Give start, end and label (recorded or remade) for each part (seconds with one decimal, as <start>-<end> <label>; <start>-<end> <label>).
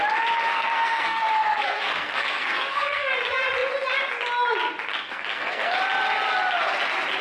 0.0-0.5 recorded; 0.5-3.1 remade; 3.1-5.0 recorded; 5.0-5.7 remade; 5.7-7.2 recorded